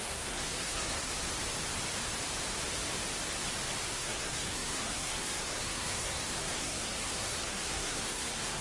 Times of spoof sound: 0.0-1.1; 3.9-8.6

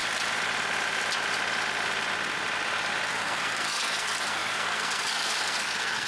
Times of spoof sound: 3.1-6.1

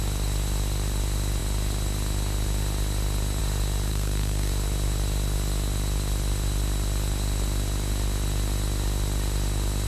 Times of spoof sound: 3.9-4.5

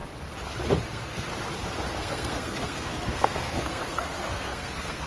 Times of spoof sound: 0.8-1.3; 2.0-5.1

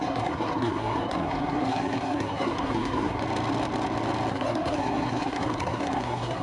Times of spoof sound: 0.0-3.2; 4.3-6.4

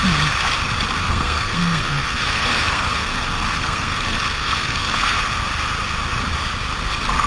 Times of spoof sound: 1.0-5.2

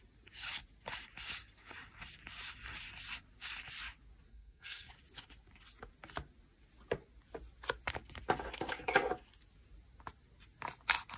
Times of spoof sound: 4.3-4.9

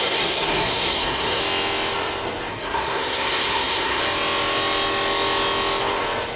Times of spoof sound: 0.0-1.4; 2.5-4.0